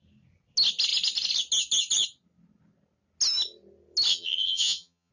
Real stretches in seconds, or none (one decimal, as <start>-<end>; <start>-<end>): 0.0-4.1